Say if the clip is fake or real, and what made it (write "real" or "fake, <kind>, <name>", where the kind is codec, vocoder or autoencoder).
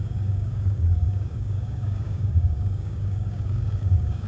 fake, codec, DAC